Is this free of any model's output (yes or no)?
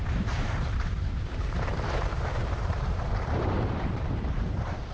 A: no